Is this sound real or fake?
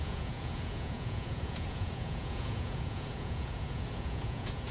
fake